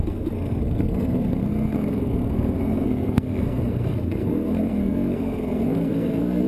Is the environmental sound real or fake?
fake